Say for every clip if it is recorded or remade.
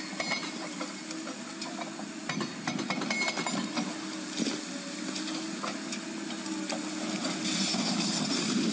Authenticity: recorded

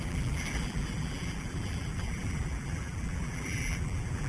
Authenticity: remade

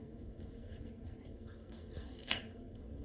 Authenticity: remade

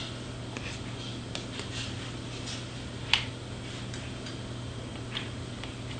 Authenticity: recorded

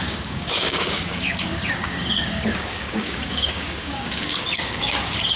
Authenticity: remade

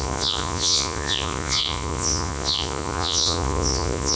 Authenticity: remade